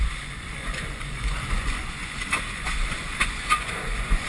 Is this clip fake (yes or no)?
yes